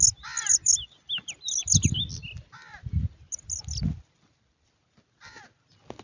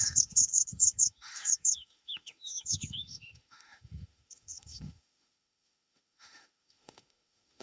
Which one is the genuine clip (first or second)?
first